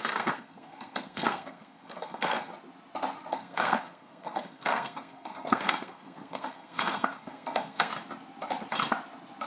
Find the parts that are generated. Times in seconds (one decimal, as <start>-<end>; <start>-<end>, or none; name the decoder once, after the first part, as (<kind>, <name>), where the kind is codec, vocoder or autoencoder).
0.0-2.5 (codec, SNAC); 3.3-7.9